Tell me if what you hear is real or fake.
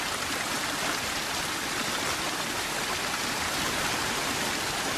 real